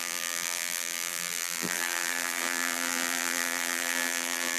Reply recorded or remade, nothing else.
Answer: remade